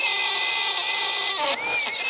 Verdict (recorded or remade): recorded